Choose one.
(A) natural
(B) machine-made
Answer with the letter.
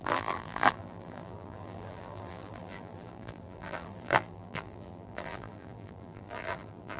B